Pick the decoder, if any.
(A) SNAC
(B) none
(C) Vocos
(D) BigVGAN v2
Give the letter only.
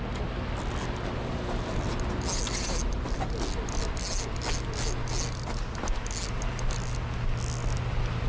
B